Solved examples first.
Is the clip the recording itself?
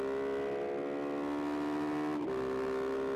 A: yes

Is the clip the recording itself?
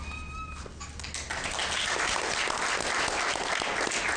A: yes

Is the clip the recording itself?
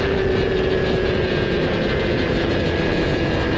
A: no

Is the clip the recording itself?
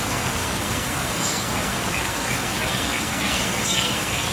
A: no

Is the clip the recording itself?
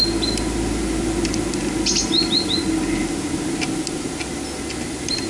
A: yes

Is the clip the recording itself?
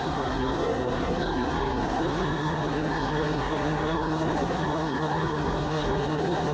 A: no